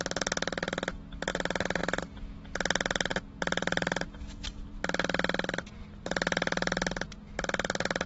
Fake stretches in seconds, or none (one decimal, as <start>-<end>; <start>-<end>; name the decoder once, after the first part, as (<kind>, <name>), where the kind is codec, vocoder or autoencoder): none

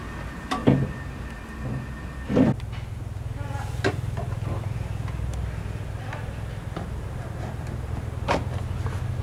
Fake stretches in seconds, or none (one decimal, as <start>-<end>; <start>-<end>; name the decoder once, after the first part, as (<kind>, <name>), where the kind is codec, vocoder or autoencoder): none

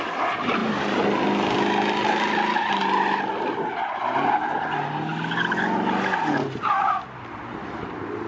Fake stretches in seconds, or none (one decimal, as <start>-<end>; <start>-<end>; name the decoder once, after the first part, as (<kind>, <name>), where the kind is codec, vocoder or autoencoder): none

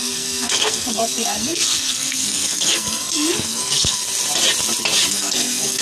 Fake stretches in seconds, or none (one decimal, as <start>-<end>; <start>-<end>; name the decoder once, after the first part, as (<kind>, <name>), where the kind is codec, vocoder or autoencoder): 0.0-4.0 (codec, SNAC); 5.1-5.8

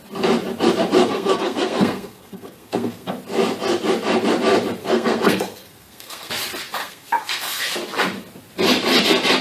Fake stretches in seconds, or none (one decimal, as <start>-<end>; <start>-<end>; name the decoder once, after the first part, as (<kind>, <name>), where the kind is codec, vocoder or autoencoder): 1.0-3.1 (codec, SNAC); 4.8-6.3; 6.8-7.7

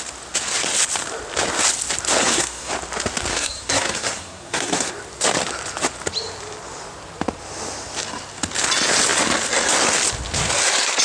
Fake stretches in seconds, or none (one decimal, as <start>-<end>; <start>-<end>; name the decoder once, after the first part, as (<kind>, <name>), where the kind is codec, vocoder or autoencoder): 2.2-2.7 (codec, SNAC); 3.3-4.9

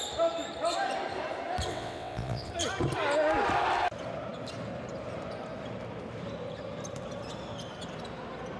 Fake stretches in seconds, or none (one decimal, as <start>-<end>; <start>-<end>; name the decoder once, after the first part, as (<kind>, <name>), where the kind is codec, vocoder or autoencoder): 1.7-2.5 (vocoder, WaveNeXt)

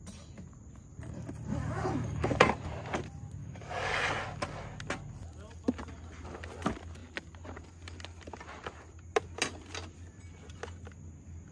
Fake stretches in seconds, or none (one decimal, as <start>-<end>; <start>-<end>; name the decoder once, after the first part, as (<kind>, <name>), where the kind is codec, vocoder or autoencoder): 1.5-2.4 (codec, DAC); 3.4-4.1